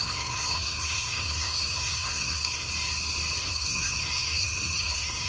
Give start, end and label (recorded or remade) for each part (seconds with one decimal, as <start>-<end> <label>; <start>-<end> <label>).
0.0-2.7 remade; 2.7-3.4 recorded; 3.4-5.3 remade